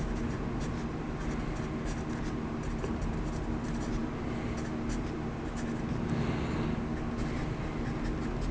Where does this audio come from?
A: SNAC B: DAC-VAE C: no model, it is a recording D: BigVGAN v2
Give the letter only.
C